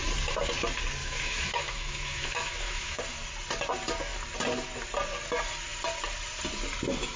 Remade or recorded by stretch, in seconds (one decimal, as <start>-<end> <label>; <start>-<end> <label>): 0.0-1.0 recorded; 1.0-3.0 remade; 3.0-7.2 recorded